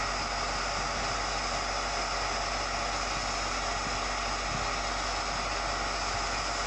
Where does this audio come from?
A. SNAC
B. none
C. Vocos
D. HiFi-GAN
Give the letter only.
B